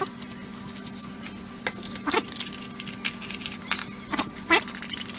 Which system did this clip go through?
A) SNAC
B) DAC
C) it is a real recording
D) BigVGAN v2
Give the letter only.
C